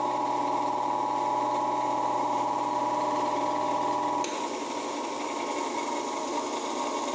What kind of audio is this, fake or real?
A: real